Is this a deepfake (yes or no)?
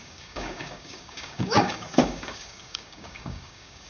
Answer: yes